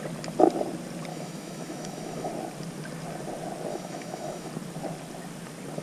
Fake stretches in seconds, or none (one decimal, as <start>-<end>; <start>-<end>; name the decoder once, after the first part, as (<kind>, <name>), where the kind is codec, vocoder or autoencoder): 1.1-2.3 (autoencoder, DAC-VAE); 3.7-4.5